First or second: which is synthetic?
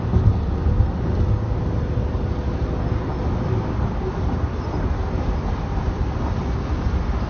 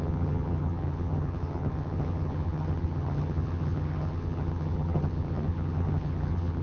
second